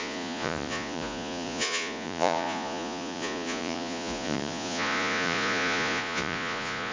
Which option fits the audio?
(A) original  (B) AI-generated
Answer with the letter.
B